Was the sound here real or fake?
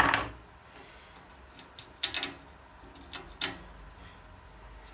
real